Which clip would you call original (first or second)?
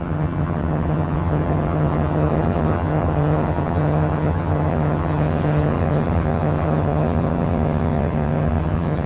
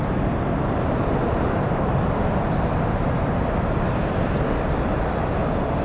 second